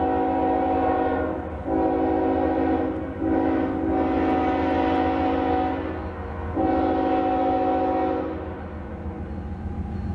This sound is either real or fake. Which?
real